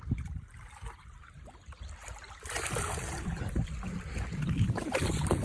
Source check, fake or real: real